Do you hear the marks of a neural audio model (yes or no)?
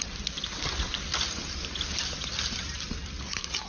no